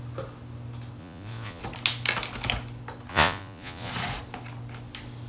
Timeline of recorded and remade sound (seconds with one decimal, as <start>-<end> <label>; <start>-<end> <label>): 0.0-1.0 recorded; 1.0-1.6 remade; 1.6-3.1 recorded; 3.1-3.9 remade; 3.9-5.3 recorded